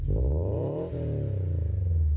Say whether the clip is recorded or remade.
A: recorded